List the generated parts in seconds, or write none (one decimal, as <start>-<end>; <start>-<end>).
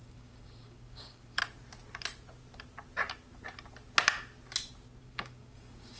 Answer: 0.0-1.4; 5.0-6.0